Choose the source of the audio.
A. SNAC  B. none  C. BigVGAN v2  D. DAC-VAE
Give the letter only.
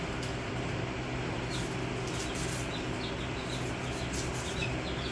B